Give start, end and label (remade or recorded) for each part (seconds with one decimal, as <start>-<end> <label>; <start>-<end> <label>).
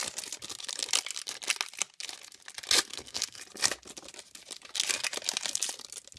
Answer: 0.0-2.9 recorded; 2.9-3.4 remade; 3.4-6.2 recorded